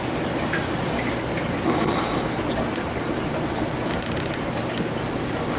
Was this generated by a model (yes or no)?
no